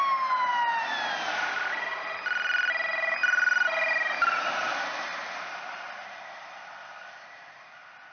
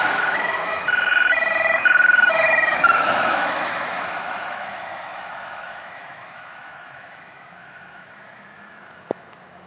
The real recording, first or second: first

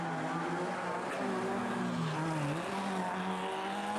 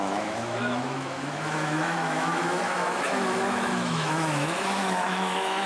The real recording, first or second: first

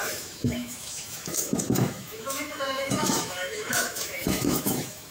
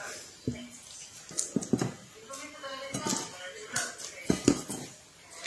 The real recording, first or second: second